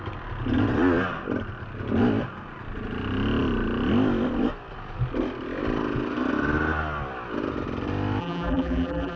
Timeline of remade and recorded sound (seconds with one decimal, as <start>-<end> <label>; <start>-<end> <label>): 0.0-8.2 recorded; 8.2-9.2 remade